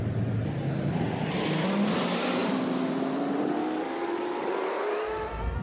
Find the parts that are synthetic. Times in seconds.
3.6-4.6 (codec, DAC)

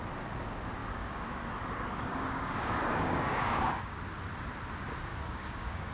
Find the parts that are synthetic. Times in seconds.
0.8-1.5 (codec, DAC); 1.9-4.0; 5.1-5.9

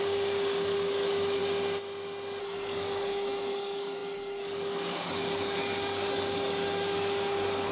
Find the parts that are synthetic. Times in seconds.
0.0-1.4 (codec, DAC); 2.4-7.7

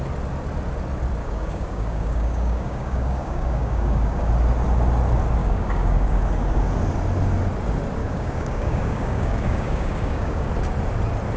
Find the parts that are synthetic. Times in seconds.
1.2-4.3 (codec, DAC); 5.4-6.7; 8.0-10.5

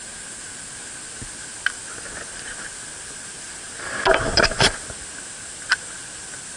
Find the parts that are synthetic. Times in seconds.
none

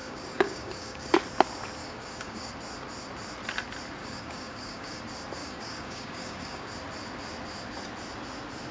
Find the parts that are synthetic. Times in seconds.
0.0-1.1 (codec, DAC); 1.8-2.5; 4.0-5.0; 5.4-6.7

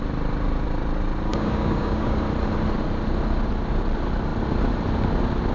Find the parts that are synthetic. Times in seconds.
1.3-2.2 (codec, DAC)

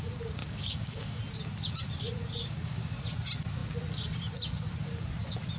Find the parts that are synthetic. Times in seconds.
0.4-1.2 (codec, DAC); 2.4-3.0